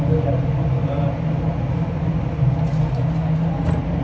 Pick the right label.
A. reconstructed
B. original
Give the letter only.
B